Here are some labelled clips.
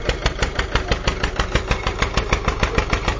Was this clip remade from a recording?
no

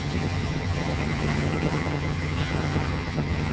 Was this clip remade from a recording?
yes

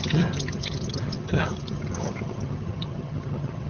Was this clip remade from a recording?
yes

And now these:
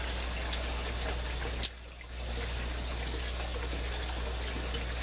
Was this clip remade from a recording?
no